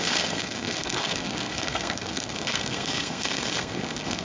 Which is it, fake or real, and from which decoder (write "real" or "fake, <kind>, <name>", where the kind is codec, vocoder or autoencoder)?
fake, codec, SNAC